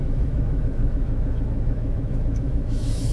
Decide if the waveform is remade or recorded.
remade